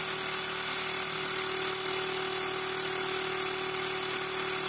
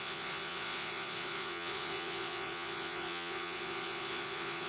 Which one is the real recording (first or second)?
first